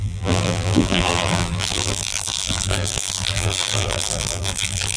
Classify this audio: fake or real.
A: fake